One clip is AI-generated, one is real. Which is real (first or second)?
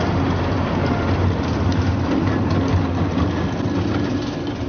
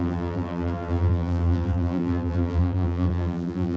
first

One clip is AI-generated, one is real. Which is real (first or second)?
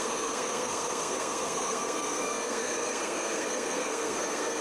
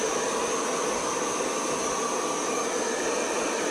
second